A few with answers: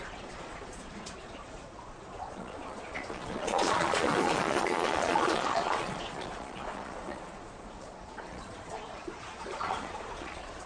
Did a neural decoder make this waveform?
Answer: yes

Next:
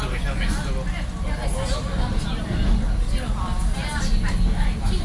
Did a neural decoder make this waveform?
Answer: no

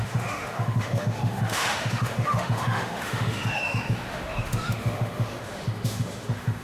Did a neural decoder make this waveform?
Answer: yes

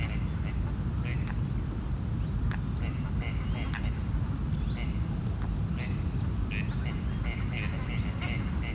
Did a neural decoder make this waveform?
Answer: no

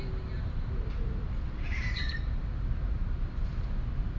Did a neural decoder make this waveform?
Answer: no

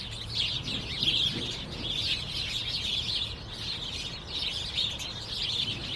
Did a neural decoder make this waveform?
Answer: no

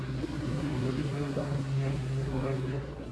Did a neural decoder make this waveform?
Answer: yes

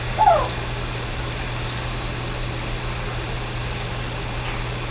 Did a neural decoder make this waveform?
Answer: no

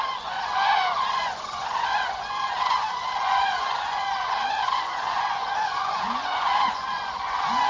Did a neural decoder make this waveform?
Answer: yes